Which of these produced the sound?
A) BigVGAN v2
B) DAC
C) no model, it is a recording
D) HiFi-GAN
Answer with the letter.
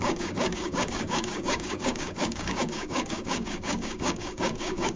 B